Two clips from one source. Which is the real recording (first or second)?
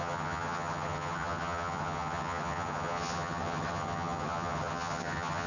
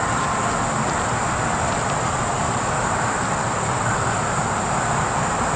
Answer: second